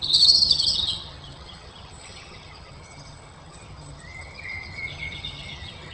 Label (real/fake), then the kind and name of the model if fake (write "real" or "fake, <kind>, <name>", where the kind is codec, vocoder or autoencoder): fake, vocoder, HiFi-GAN